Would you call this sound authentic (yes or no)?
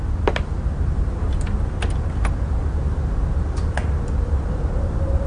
yes